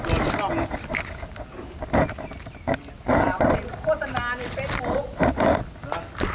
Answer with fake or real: real